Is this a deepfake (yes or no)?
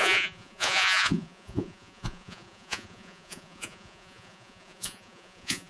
yes